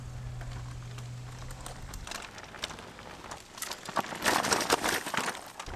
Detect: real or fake real